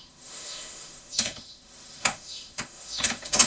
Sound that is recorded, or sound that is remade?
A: remade